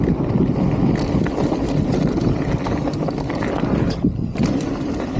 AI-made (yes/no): no